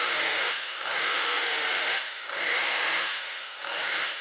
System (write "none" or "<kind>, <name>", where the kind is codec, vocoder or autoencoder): autoencoder, DAC-VAE